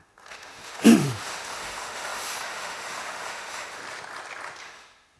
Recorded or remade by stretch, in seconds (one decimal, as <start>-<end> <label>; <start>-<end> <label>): 0.0-3.8 remade; 3.8-4.6 recorded; 4.6-5.2 remade